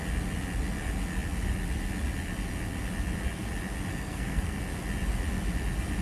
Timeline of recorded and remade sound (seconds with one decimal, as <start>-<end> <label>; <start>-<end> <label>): 0.0-3.9 recorded; 3.9-4.6 remade; 4.6-6.0 recorded